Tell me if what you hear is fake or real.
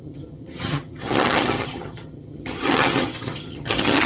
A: fake